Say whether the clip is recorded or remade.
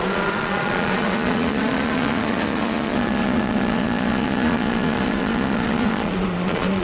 remade